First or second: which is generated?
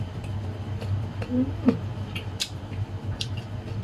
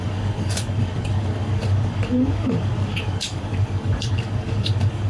second